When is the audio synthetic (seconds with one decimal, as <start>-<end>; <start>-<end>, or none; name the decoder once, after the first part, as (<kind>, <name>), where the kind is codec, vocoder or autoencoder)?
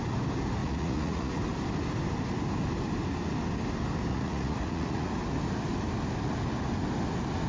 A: 0.6-1.4 (vocoder, Vocos); 4.1-5.1